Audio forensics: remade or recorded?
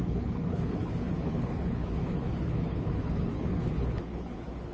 remade